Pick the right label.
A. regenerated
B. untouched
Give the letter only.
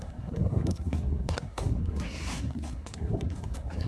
A